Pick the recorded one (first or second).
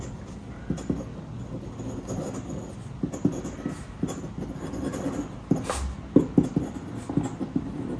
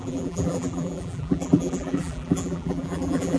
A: first